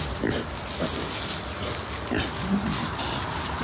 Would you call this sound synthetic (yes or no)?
no